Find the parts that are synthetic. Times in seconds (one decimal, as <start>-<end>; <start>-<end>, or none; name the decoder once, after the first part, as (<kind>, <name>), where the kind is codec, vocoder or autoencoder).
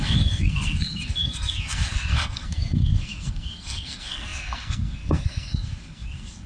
0.0-6.5 (codec, SNAC)